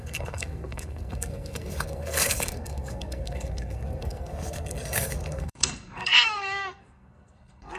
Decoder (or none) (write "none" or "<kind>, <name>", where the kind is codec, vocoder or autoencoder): codec, SNAC